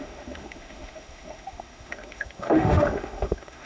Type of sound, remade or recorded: remade